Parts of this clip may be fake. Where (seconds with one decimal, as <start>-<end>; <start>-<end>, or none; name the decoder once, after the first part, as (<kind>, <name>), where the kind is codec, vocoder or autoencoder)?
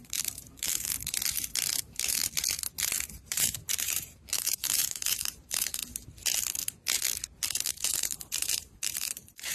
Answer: 0.0-0.9 (vocoder, BigVGAN v2); 1.8-2.2; 3.1-5.8; 7.7-9.5